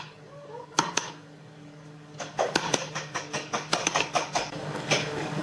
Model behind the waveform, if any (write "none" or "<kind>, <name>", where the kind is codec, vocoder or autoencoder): codec, DAC